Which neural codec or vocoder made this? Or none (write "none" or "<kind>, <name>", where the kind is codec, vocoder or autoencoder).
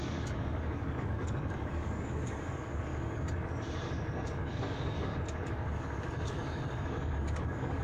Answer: codec, DAC